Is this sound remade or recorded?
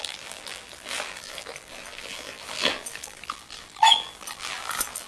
remade